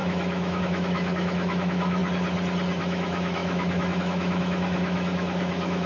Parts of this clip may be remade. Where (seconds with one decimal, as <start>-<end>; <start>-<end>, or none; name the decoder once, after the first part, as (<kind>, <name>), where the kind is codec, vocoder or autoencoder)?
0.0-2.0 (autoencoder, DAC-VAE); 2.8-5.9